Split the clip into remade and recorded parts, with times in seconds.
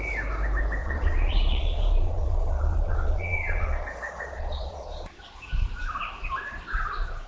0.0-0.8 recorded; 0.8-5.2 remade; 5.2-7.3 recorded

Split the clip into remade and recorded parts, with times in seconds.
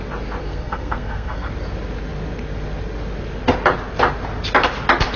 0.0-0.4 recorded; 0.4-1.5 remade; 1.5-5.2 recorded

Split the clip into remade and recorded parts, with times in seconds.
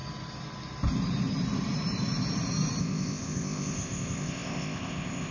0.0-2.8 recorded; 2.8-5.3 remade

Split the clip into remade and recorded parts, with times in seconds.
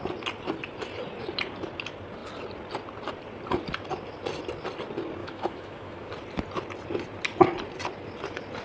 0.0-5.2 recorded; 5.2-6.1 remade; 6.1-8.6 recorded